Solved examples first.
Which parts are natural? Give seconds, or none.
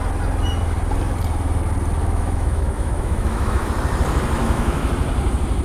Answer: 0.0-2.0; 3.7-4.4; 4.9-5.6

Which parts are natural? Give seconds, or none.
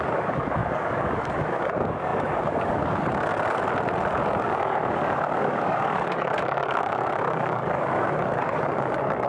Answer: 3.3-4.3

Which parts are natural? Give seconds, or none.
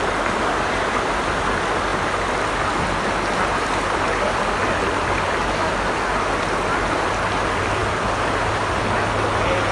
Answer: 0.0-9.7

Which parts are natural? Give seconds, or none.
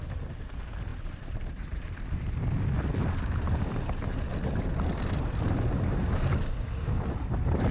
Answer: 0.0-0.9; 1.9-7.7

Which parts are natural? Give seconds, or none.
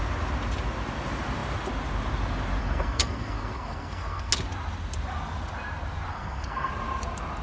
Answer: 0.0-2.6; 4.3-6.1; 6.7-7.4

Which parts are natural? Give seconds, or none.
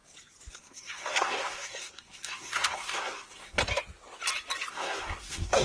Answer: 0.0-0.5; 3.6-4.7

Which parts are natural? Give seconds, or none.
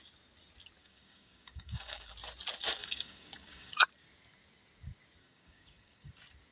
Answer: 0.0-0.8; 2.1-2.8; 3.8-5.2; 6.1-6.5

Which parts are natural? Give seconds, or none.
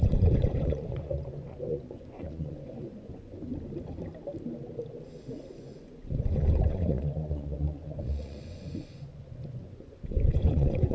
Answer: 3.5-5.3